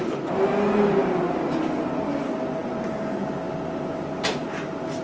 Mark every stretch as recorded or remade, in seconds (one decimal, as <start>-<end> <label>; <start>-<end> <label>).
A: 0.0-5.0 recorded

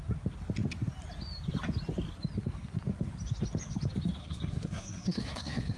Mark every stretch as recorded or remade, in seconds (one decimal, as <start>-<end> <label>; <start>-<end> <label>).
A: 0.0-4.2 recorded; 4.2-5.8 remade

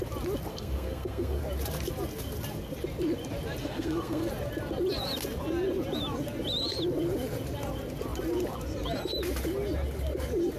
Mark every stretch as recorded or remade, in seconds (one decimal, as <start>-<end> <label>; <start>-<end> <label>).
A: 0.0-0.5 recorded; 0.5-1.4 remade; 1.4-3.6 recorded; 3.6-4.3 remade; 4.3-10.6 recorded

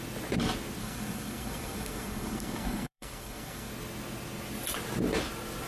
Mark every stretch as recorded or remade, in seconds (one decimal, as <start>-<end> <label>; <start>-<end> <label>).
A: 0.0-0.8 recorded; 0.8-3.7 remade; 3.7-5.7 recorded

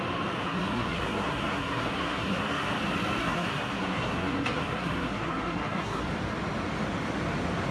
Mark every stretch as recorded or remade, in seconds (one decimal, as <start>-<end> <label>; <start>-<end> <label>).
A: 0.0-0.4 recorded; 0.4-2.8 remade; 2.8-3.2 recorded; 3.2-6.0 remade; 6.0-7.7 recorded

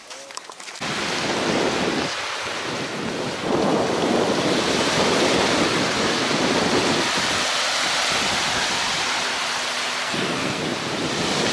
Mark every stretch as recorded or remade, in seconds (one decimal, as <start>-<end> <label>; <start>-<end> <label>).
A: 0.0-10.0 recorded; 10.0-10.6 remade; 10.6-11.5 recorded

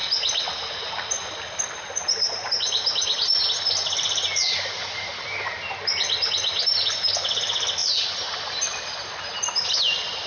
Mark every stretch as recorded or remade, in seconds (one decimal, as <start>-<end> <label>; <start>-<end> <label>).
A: 0.0-10.3 recorded

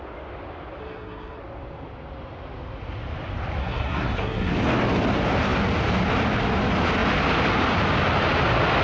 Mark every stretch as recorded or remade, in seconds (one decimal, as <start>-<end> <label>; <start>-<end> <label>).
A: 0.0-0.8 recorded; 0.8-1.4 remade; 1.4-3.6 recorded; 3.6-4.5 remade; 4.5-8.8 recorded